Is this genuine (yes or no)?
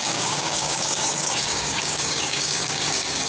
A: no